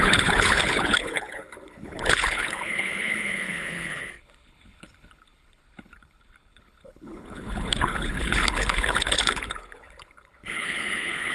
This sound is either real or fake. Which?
fake